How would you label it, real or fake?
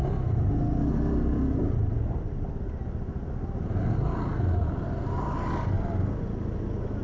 real